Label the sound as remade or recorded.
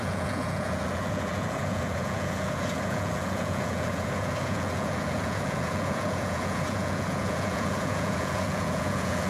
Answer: remade